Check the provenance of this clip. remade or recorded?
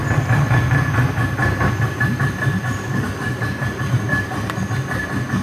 recorded